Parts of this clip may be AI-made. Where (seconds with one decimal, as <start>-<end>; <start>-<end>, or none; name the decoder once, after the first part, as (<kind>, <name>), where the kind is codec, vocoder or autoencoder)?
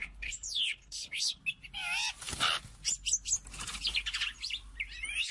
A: 0.0-1.4 (codec, HILCodec)